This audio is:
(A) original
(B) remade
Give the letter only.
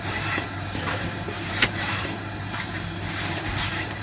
B